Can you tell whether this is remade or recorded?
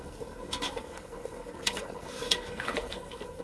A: remade